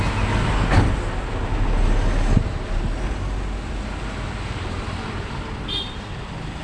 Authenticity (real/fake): real